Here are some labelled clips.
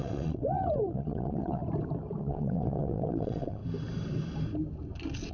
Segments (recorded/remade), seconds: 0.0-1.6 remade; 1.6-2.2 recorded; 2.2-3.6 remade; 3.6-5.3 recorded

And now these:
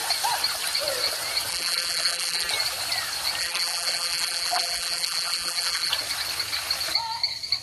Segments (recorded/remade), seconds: 0.0-1.5 recorded; 1.5-2.5 remade; 2.5-3.4 recorded; 3.4-5.9 remade; 5.9-7.6 recorded

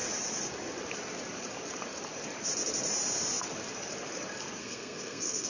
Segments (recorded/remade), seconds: 0.0-4.6 recorded; 4.6-5.5 remade

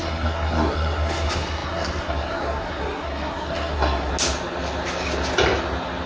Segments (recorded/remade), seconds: 0.0-4.1 remade; 4.1-6.1 recorded

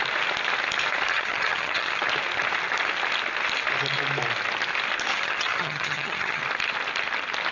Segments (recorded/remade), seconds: 0.0-1.1 recorded; 1.1-2.0 remade; 2.0-5.1 recorded; 5.1-6.4 remade; 6.4-7.5 recorded

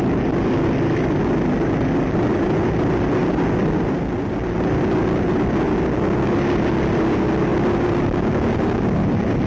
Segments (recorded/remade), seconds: 0.0-9.5 recorded